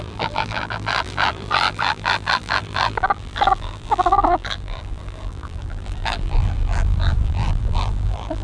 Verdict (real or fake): fake